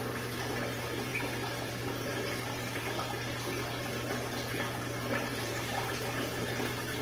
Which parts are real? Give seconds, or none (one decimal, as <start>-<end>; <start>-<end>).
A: 0.0-5.3; 6.0-7.0